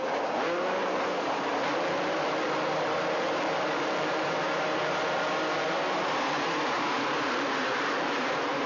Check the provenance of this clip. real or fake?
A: fake